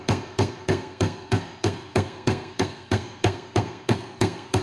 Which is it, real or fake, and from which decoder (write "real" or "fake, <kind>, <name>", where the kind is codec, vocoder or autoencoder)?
fake, codec, SNAC